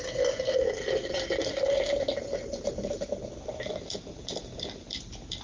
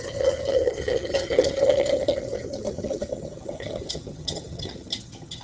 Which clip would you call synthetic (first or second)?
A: second